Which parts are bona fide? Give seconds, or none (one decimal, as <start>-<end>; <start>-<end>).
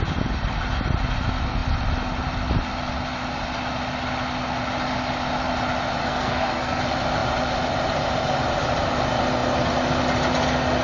0.0-6.0; 6.8-10.8